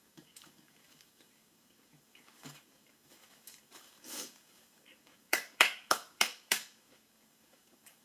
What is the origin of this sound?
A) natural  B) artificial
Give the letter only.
B